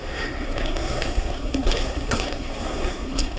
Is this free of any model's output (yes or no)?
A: no